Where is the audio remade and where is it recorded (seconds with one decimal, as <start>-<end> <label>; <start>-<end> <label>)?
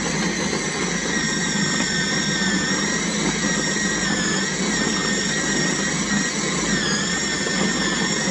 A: 0.0-8.3 recorded